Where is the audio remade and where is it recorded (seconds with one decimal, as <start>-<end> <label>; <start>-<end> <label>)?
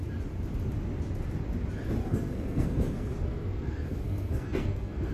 0.0-2.0 recorded; 2.0-5.1 remade